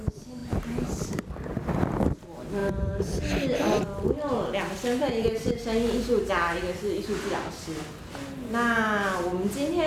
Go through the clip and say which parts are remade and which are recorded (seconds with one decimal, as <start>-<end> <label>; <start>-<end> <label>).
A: 0.0-9.9 recorded